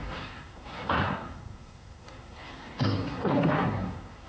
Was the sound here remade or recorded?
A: remade